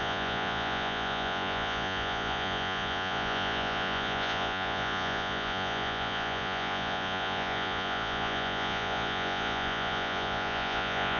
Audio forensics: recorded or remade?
remade